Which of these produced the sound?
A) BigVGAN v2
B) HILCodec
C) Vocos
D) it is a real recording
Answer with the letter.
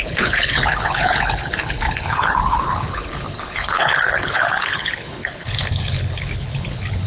B